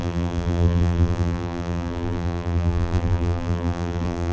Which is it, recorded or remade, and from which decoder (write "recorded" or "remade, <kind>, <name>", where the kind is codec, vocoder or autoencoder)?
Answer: remade, vocoder, BigVGAN v2